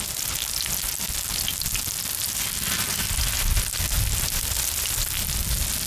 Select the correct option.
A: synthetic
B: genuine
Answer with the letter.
B